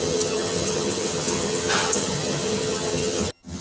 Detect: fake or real fake